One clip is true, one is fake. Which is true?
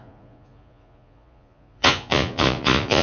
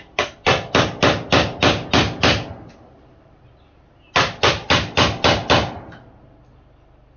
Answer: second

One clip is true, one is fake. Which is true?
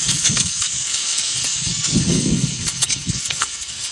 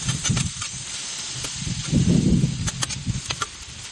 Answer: second